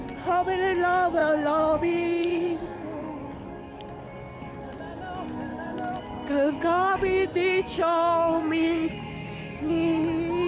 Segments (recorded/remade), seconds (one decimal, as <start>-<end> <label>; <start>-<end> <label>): 0.0-1.2 recorded; 1.2-3.8 remade; 3.8-5.5 recorded; 5.5-9.7 remade; 9.7-10.5 recorded